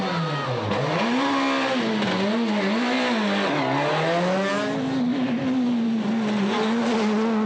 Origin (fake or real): real